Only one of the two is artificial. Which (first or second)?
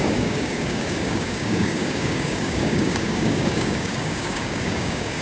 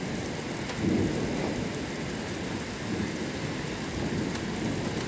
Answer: first